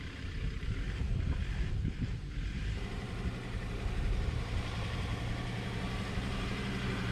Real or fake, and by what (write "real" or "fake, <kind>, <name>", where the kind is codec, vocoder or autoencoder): fake, vocoder, BigVGAN v2